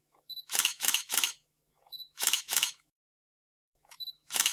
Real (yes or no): no